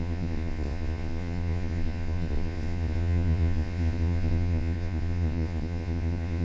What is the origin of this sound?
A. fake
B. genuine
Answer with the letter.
A